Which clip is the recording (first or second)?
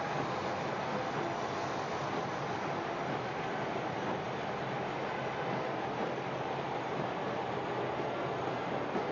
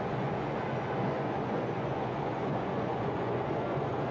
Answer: first